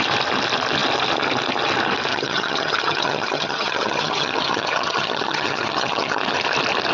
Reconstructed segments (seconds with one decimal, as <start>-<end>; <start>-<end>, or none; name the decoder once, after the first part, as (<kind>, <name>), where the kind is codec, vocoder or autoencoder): 2.1-6.2 (vocoder, HiFi-GAN)